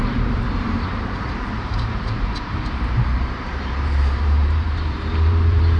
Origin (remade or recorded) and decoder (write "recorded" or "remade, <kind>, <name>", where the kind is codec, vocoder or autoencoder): remade, vocoder, BigVGAN v2